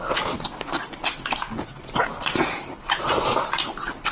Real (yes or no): yes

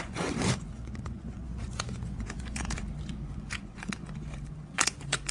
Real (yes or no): no